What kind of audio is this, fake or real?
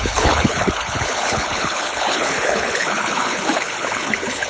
fake